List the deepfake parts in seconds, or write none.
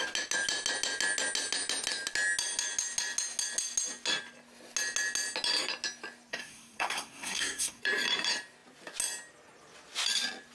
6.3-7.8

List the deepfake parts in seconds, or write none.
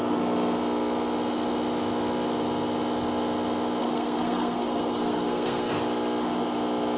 3.8-5.7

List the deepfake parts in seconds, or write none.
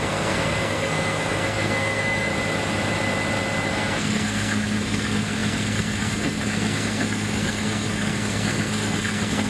0.0-2.3; 3.7-9.5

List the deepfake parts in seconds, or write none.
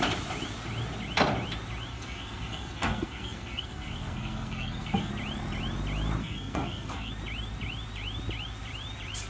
1.9-5.1; 6.2-7.1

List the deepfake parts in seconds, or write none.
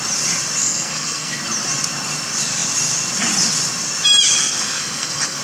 0.6-1.4; 4.4-5.4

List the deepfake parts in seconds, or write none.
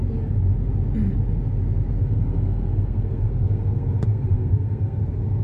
2.0-5.0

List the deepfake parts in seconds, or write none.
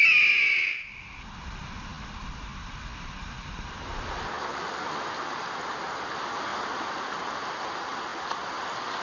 none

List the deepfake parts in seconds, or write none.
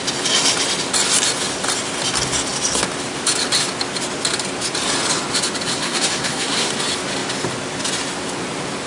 5.7-6.7